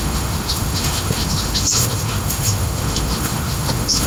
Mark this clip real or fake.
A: fake